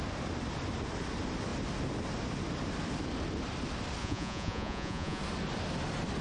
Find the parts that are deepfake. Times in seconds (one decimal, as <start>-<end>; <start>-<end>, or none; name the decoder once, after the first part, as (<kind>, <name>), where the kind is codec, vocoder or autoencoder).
4.0-5.2 (vocoder, Vocos)